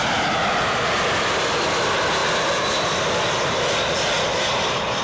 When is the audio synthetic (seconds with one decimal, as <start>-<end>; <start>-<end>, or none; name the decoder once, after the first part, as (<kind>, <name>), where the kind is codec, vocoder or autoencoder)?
none